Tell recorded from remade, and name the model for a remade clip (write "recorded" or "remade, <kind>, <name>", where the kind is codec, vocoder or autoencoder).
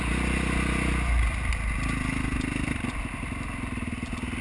recorded